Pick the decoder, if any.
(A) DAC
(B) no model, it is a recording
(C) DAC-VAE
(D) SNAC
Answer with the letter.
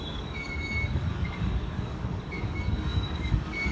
A